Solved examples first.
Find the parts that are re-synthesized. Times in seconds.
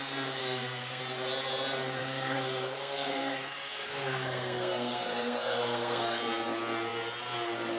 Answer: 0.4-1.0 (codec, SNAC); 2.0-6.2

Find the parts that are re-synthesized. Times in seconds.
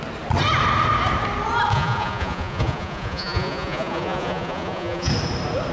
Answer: 1.7-5.1 (vocoder, Vocos)